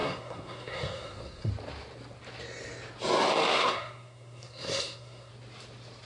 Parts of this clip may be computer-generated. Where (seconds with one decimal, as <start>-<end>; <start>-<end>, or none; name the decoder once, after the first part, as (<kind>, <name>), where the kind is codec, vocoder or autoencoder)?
0.0-1.5 (codec, SNAC); 3.5-5.3